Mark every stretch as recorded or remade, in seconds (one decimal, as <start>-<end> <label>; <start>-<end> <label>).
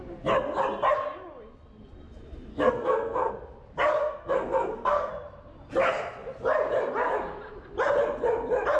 0.0-2.5 recorded; 2.5-3.3 remade; 3.3-4.0 recorded; 4.0-5.1 remade; 5.1-8.8 recorded